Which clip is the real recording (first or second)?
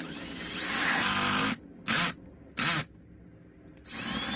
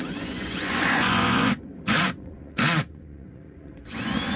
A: first